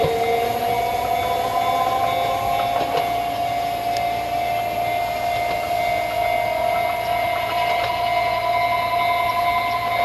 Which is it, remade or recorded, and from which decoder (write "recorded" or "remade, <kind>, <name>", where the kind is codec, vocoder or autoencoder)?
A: recorded